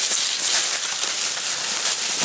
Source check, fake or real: real